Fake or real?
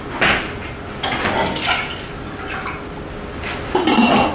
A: real